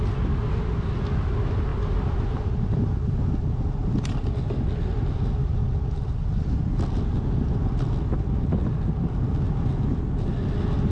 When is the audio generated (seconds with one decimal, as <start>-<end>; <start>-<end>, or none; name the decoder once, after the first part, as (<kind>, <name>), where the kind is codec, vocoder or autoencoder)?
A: 1.7-3.1 (vocoder, BigVGAN v2)